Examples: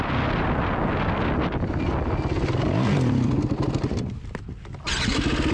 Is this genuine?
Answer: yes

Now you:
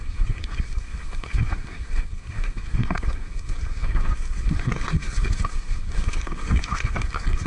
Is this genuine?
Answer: no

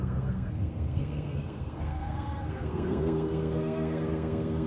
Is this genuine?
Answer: no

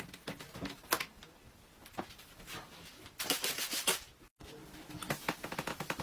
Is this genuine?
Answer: yes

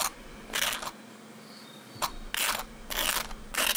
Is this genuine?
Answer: yes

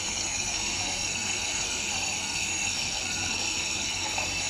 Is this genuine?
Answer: no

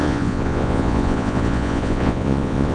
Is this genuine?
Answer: no